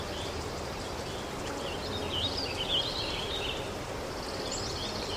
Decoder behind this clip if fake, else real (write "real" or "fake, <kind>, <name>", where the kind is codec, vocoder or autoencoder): real